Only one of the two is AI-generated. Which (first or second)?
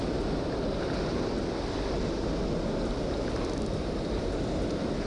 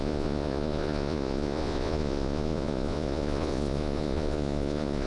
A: second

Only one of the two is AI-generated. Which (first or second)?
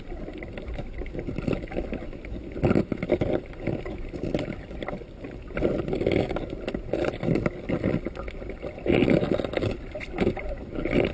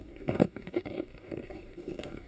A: second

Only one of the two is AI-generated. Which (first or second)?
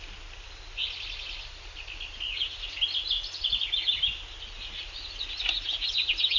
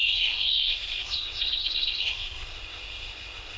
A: second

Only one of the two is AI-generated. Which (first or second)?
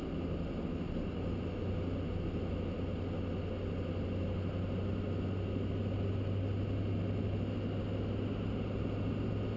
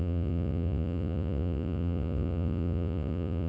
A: second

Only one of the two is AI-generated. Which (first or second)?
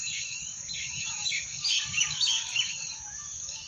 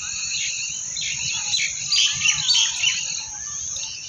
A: first